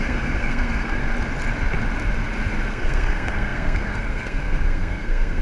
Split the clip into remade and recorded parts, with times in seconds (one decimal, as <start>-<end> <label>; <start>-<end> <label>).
0.0-1.0 remade; 1.0-2.7 recorded; 2.7-5.4 remade